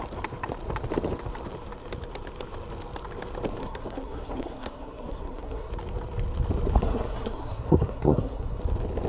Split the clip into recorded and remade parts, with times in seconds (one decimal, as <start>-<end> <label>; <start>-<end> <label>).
0.0-3.6 recorded; 3.6-5.7 remade; 5.7-6.8 recorded; 6.8-8.6 remade; 8.6-9.1 recorded